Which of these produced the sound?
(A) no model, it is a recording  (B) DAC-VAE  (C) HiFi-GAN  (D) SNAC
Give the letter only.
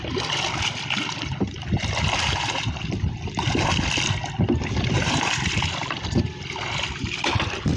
A